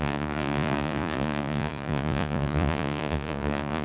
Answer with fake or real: fake